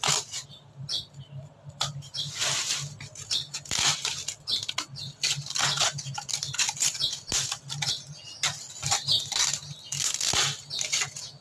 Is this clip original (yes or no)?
yes